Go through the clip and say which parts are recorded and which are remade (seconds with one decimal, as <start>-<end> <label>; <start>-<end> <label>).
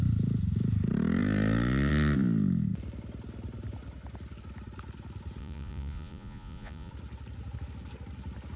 0.0-5.4 recorded; 5.4-6.9 remade; 6.9-8.6 recorded